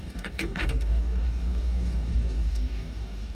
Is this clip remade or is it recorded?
remade